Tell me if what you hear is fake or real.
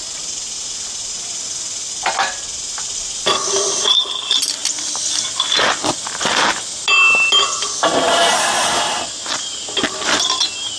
real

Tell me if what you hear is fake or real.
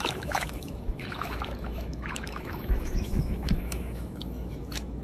fake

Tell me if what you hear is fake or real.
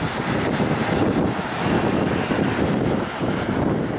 real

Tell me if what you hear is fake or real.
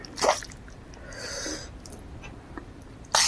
real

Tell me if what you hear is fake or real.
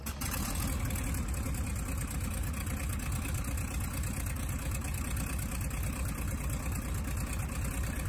real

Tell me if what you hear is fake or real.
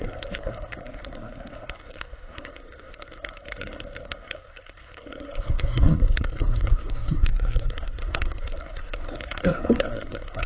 fake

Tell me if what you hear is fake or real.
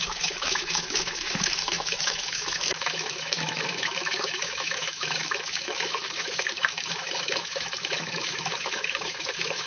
fake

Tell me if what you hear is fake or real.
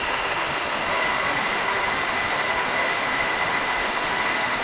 fake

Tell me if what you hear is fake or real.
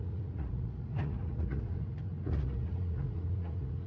fake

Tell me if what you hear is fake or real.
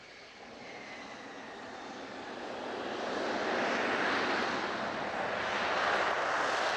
real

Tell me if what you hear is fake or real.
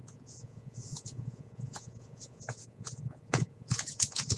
fake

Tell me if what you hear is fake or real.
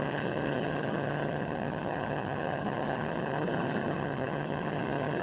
fake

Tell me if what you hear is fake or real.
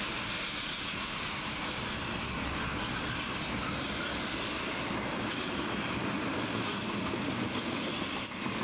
real